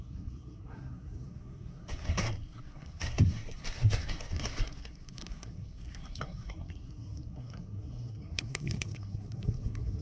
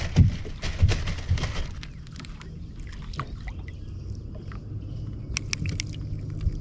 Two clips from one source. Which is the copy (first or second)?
first